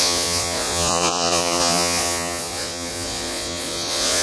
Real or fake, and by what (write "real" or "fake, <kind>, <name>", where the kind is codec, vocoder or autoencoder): fake, vocoder, Vocos